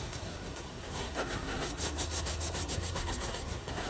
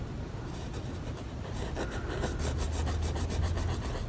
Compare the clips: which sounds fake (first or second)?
first